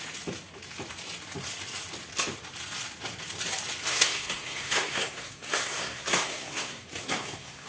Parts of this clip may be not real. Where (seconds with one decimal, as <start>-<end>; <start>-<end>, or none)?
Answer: 3.9-7.7